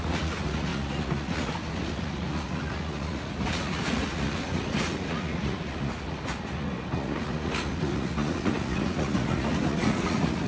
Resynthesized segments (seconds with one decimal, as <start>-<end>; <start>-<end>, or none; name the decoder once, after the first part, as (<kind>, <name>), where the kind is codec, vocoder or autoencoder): 0.0-10.5 (vocoder, Vocos)